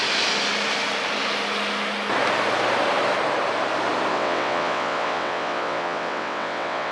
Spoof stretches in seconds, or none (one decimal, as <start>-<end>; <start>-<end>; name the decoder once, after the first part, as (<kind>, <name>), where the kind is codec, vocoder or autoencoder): 4.1-6.9 (vocoder, WaveNeXt)